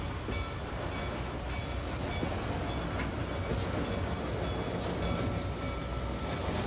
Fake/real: real